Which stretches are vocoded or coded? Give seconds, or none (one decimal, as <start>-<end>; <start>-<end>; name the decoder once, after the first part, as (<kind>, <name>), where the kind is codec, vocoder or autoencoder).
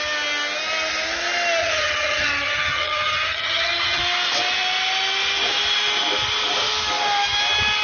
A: 1.6-4.0 (vocoder, HiFi-GAN)